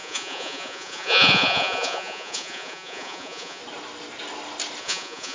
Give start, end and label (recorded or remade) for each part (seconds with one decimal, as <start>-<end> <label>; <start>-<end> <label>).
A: 0.0-3.6 remade; 3.6-4.8 recorded; 4.8-5.3 remade